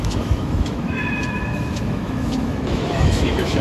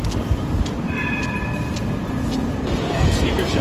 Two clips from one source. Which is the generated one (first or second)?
first